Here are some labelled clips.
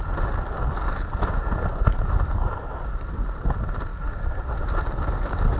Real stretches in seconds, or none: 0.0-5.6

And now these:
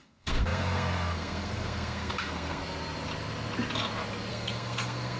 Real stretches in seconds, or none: 2.6-4.3

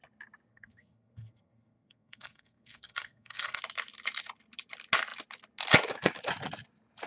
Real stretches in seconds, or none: 0.0-0.5; 3.6-7.1

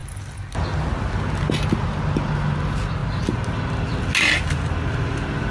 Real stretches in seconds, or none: 0.0-5.5

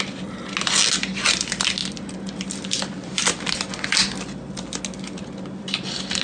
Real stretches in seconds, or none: 0.0-6.2

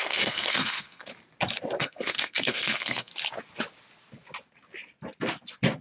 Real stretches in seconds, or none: 1.1-1.8; 3.1-5.8